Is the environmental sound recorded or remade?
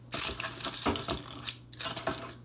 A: recorded